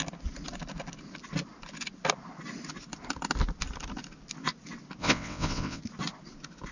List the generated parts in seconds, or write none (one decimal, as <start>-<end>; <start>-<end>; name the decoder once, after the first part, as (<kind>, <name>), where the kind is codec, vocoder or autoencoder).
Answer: 5.0-5.8 (vocoder, WaveNeXt)